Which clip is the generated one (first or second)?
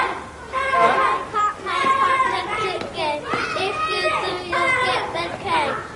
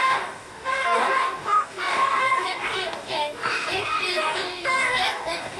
second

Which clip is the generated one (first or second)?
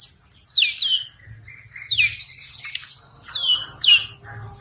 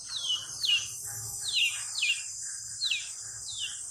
second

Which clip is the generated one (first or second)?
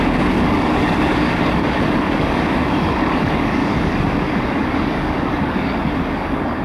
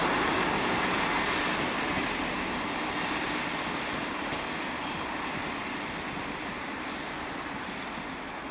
first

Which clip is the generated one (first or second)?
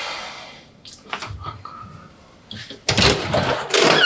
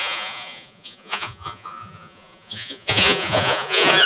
second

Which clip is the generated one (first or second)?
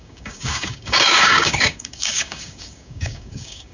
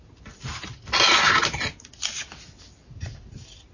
first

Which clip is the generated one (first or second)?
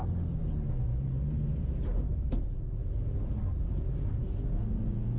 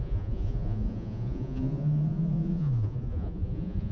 second